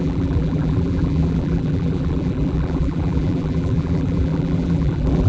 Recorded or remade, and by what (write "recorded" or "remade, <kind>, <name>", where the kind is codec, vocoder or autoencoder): remade, vocoder, BigVGAN v2